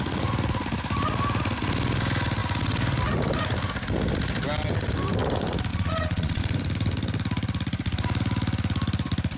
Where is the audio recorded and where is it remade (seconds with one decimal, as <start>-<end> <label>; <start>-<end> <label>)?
0.0-5.7 recorded; 5.7-6.4 remade; 6.4-9.4 recorded